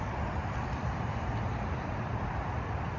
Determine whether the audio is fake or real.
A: fake